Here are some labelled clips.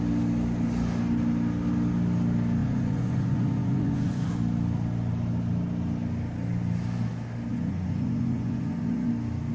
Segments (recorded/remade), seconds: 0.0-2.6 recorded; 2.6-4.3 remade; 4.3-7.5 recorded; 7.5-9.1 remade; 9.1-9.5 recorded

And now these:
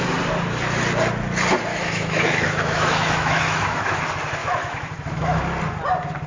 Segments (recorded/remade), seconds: 0.0-1.7 recorded; 1.7-4.0 remade; 4.0-4.4 recorded; 4.4-5.4 remade; 5.4-6.3 recorded

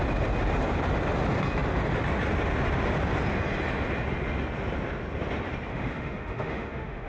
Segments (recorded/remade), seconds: 0.0-5.7 recorded; 5.7-7.1 remade

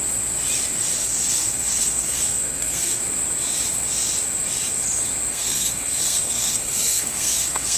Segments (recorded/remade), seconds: 0.0-1.0 recorded; 1.0-3.0 remade; 3.0-5.3 recorded; 5.3-7.8 remade